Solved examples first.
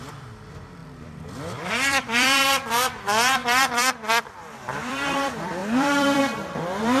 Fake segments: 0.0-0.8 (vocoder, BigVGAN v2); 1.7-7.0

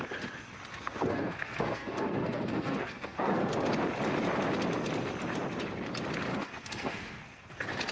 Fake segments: 0.7-3.5 (codec, SNAC); 6.3-7.5

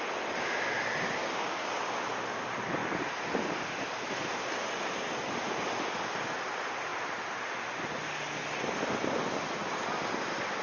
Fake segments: 1.2-1.8 (codec, DAC)

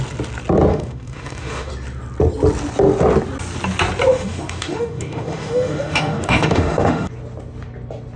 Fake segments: 0.7-1.7 (autoencoder, DAC-VAE); 4.1-7.1

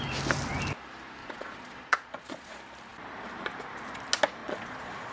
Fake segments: 1.2-2.5 (vocoder, Vocos); 4.4-5.1

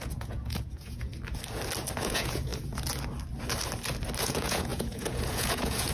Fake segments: 0.0-1.1 (vocoder, Vocos); 2.0-2.5; 4.2-5.9